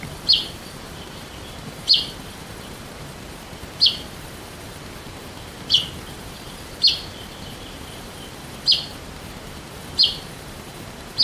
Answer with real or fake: fake